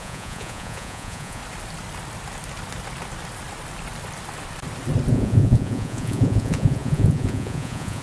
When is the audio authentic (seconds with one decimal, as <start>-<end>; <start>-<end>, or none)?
1.4-5.1